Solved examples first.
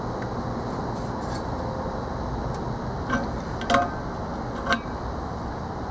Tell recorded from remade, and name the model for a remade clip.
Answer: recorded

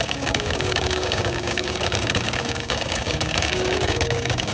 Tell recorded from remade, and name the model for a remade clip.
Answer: remade, codec, DAC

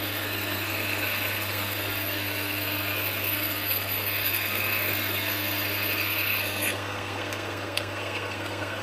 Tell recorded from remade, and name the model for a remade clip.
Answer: remade, codec, SNAC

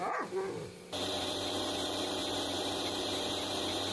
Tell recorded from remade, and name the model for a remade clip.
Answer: remade, vocoder, BigVGAN v2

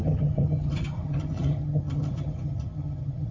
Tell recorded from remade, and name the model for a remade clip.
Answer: remade, vocoder, HiFi-GAN